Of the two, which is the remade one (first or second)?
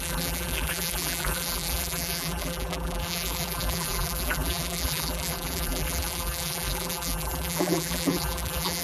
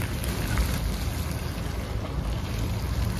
first